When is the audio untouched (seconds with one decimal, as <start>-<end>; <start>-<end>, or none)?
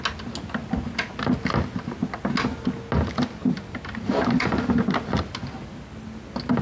0.0-3.4; 4.6-6.6